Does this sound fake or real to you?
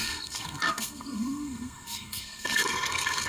fake